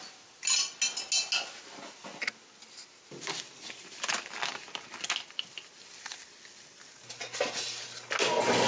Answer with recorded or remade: recorded